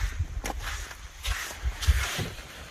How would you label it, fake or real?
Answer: real